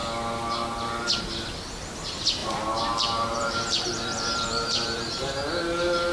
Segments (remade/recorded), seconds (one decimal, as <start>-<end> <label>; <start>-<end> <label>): 0.0-2.4 recorded; 2.4-5.3 remade; 5.3-6.1 recorded